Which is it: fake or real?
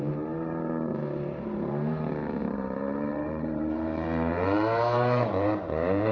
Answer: fake